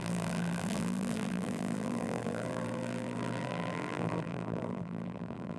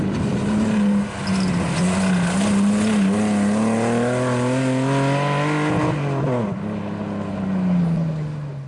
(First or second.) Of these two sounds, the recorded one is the second